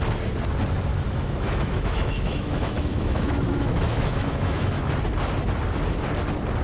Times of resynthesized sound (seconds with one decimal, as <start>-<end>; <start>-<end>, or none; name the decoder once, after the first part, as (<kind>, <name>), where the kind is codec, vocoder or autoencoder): 0.9-4.9 (autoencoder, DAC-VAE)